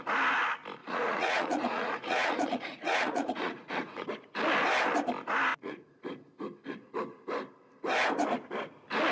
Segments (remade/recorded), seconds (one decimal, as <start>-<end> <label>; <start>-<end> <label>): 0.0-0.8 recorded; 0.8-4.1 remade; 4.1-5.5 recorded; 5.5-6.0 remade; 6.0-9.1 recorded